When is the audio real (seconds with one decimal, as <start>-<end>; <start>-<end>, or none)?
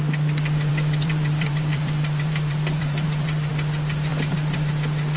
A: 0.0-0.7; 3.5-4.1; 4.7-5.2